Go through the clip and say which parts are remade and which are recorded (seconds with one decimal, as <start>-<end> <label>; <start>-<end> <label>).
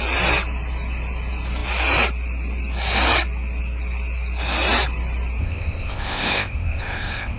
0.0-5.4 recorded; 5.4-7.4 remade